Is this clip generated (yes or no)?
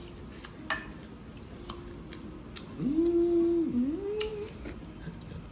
no